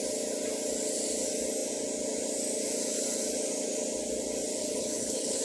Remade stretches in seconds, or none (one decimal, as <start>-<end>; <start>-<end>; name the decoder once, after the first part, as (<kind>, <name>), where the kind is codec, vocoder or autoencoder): 4.6-5.4 (codec, HILCodec)

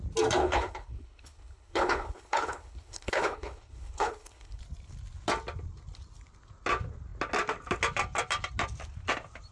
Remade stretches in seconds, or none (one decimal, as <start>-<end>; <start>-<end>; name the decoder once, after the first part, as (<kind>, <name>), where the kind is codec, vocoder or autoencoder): 0.4-4.6 (codec, HILCodec)

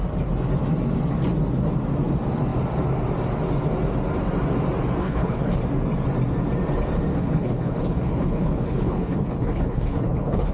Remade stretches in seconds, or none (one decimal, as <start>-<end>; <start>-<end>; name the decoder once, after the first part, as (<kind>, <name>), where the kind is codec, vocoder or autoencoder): 5.0-5.6 (codec, HILCodec); 7.1-10.5